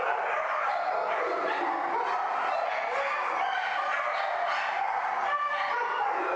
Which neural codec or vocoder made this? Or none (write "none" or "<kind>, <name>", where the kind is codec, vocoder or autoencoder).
none